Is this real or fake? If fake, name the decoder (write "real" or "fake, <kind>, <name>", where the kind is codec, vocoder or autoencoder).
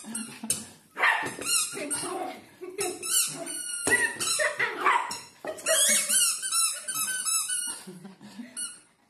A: real